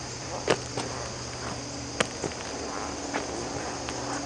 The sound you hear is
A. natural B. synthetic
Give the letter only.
A